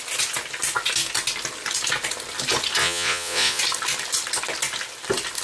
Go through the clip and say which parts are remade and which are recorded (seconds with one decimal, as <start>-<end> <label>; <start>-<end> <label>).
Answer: 0.0-2.8 recorded; 2.8-3.6 remade; 3.6-5.4 recorded